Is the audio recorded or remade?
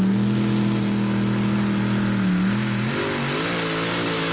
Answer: recorded